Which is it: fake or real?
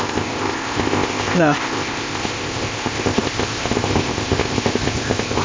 fake